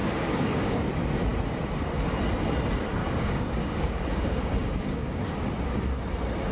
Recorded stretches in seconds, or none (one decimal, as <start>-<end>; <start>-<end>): 0.9-3.0; 5.2-6.5